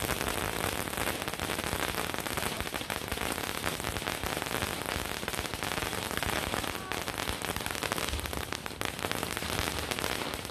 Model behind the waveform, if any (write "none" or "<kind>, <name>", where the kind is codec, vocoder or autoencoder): none